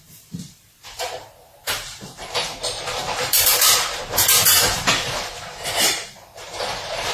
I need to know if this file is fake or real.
fake